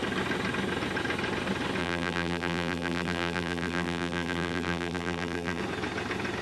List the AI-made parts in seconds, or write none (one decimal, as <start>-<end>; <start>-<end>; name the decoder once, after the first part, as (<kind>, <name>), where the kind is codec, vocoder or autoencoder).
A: 1.8-5.6 (vocoder, BigVGAN v2)